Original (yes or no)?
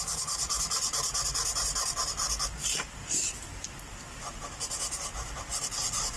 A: yes